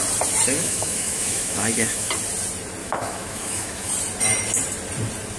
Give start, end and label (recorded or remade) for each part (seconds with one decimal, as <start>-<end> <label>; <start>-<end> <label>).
0.0-0.6 recorded; 0.6-2.1 remade; 2.1-2.8 recorded; 2.8-3.9 remade; 3.9-5.4 recorded